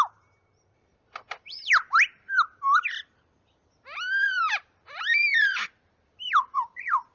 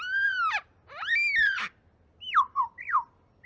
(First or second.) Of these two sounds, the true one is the second